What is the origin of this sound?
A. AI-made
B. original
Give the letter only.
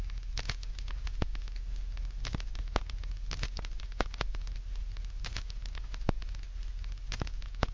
B